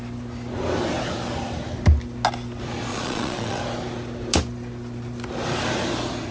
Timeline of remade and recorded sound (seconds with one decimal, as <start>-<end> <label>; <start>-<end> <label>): 0.0-2.9 recorded; 2.9-3.6 remade; 3.6-6.3 recorded